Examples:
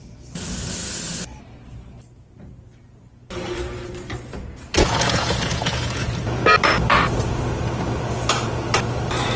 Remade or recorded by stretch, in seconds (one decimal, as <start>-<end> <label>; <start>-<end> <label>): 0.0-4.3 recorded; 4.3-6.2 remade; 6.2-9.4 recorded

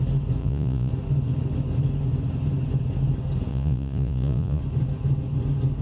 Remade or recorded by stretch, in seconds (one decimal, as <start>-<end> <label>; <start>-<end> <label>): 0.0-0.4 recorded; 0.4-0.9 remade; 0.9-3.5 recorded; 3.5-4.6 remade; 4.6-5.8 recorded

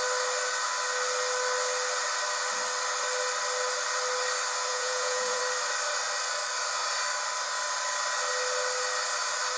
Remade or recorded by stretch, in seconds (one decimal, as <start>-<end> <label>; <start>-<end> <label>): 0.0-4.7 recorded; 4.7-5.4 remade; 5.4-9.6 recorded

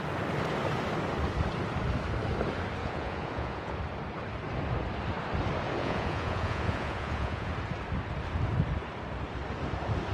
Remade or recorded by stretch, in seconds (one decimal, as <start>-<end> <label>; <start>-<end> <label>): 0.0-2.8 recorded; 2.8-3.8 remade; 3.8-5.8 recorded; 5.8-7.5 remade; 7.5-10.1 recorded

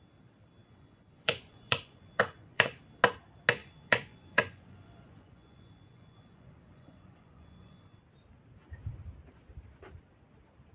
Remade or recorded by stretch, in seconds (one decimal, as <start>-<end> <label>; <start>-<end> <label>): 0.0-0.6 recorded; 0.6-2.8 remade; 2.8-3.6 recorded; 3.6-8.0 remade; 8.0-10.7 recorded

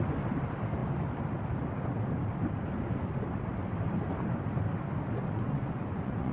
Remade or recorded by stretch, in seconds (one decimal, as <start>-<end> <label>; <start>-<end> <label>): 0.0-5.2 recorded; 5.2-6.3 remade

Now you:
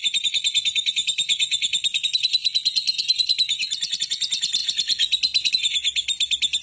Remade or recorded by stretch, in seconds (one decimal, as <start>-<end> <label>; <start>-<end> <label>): 0.0-6.6 recorded